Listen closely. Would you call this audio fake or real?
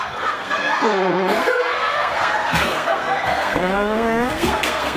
fake